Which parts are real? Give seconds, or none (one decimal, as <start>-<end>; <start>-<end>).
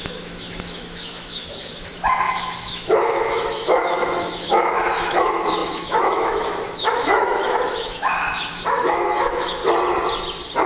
9.6-10.7